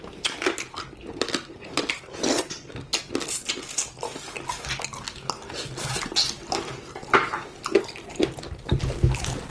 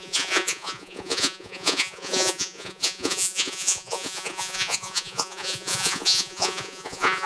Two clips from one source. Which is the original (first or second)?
first